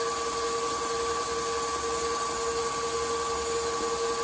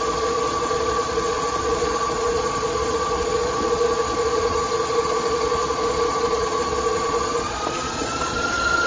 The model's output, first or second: second